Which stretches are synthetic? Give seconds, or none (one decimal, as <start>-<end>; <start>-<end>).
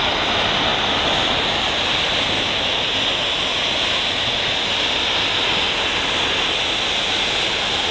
none